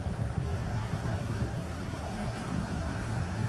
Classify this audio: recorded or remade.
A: remade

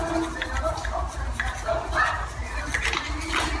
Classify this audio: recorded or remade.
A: recorded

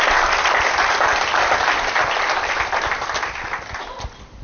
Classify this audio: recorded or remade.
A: recorded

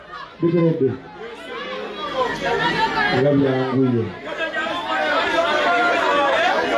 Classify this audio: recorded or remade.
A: recorded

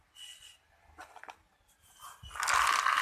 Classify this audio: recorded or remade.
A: recorded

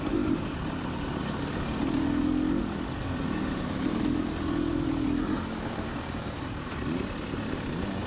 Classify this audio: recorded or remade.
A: recorded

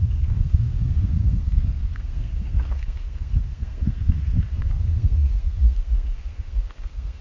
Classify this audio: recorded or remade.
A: remade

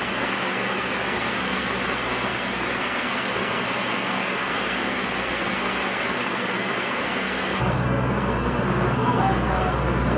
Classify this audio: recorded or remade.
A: remade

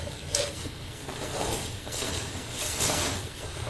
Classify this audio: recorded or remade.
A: remade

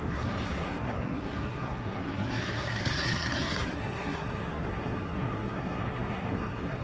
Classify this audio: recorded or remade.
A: remade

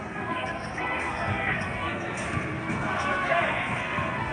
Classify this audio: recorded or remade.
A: remade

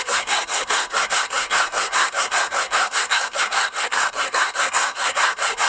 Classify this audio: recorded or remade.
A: remade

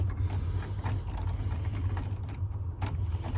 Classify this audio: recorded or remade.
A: recorded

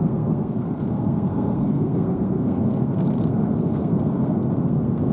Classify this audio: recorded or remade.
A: remade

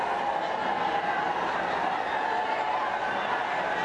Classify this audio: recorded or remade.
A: recorded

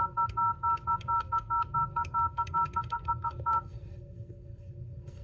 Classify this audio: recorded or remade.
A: remade